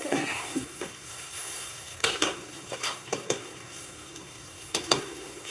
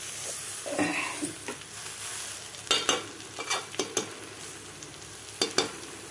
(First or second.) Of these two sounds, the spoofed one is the first